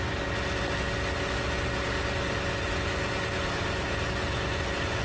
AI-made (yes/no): no